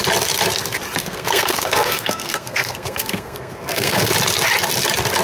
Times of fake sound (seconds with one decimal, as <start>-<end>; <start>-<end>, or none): 1.0-4.1